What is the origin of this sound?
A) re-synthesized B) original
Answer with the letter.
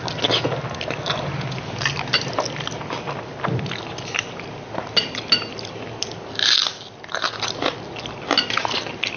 B